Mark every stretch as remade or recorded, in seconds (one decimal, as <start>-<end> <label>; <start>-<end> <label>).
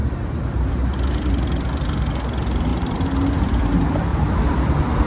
0.0-0.7 remade; 0.7-4.1 recorded; 4.1-5.1 remade